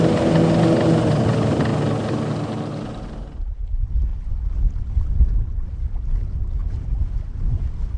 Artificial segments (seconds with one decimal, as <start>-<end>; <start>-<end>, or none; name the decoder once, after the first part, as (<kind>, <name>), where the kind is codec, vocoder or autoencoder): 6.6-7.1 (vocoder, BigVGAN v2)